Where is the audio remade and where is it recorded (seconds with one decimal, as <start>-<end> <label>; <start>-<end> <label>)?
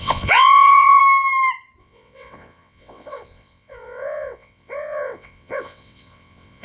0.0-1.0 remade; 1.0-1.8 recorded; 1.8-6.6 remade